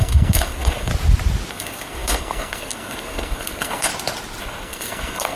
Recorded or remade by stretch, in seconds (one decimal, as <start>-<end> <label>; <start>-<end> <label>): 0.0-0.9 remade; 0.9-1.5 recorded; 1.5-3.9 remade; 3.9-4.4 recorded; 4.4-5.4 remade